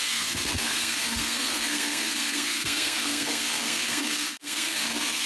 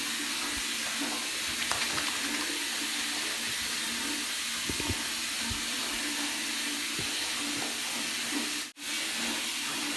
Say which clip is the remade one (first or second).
first